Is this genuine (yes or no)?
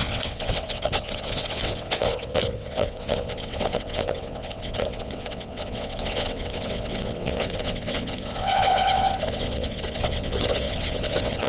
no